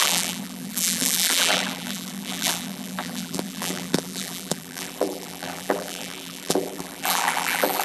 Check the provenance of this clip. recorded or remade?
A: remade